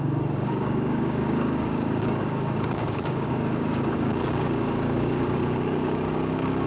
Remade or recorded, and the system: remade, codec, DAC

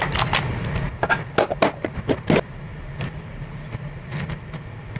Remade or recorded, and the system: recorded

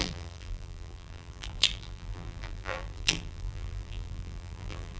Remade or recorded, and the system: remade, vocoder, BigVGAN v2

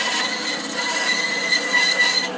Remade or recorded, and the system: recorded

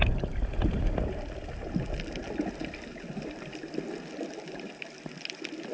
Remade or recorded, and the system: recorded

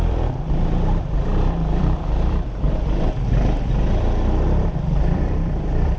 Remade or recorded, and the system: remade, vocoder, BigVGAN v2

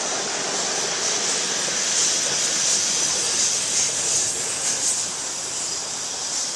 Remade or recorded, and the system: recorded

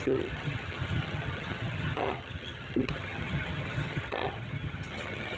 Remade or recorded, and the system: remade, vocoder, HiFi-GAN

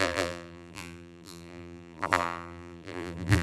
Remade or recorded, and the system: remade, vocoder, BigVGAN v2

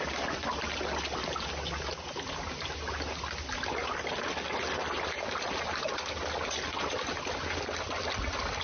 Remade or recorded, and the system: recorded